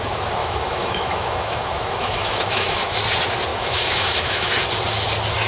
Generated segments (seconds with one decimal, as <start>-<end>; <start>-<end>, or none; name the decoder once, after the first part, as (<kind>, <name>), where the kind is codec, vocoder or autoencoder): 0.4-3.0 (autoencoder, DAC-VAE); 3.5-4.5